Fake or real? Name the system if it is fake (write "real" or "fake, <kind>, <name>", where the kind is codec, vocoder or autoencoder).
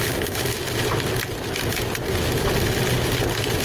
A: real